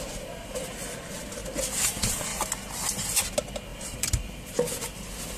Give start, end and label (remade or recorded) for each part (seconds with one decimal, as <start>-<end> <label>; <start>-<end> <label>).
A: 0.0-3.7 recorded; 3.7-4.3 remade; 4.3-5.4 recorded